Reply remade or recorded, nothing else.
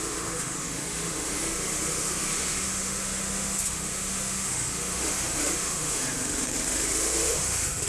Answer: remade